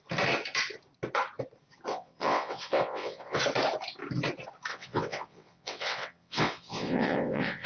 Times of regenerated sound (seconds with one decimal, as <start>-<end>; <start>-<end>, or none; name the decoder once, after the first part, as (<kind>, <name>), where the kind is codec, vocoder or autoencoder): 1.9-3.4 (vocoder, WaveNeXt); 4.7-7.7